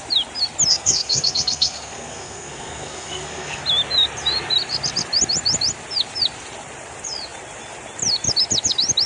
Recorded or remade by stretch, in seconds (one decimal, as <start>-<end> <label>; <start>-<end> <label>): 0.0-0.7 recorded; 0.7-3.6 remade; 3.6-9.1 recorded